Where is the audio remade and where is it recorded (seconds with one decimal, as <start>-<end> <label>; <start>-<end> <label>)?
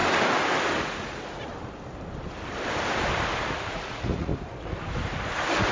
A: 0.0-0.8 recorded; 0.8-1.5 remade; 1.5-3.7 recorded; 3.7-4.3 remade; 4.3-5.7 recorded